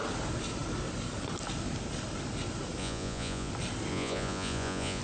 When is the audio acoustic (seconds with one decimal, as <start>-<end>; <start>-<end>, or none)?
0.0-2.8; 3.5-3.9